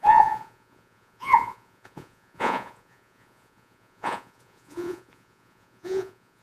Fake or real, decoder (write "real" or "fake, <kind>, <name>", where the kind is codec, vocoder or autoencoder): fake, vocoder, Vocos